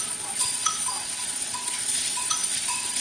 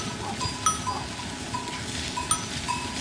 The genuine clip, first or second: second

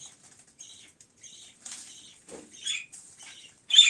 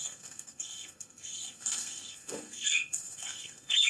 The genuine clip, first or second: first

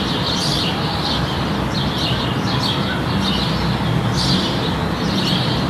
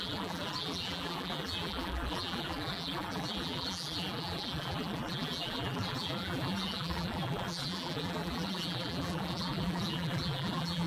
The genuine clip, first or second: first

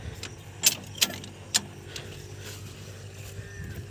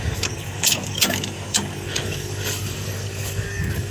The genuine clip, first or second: first